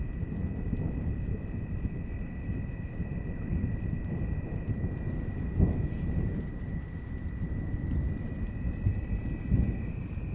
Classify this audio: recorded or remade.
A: remade